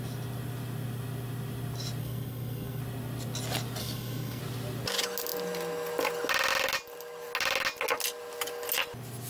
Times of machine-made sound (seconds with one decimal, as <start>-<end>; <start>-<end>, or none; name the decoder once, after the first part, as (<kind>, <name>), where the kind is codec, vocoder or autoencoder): 2.0-2.8 (codec, SNAC); 3.8-4.4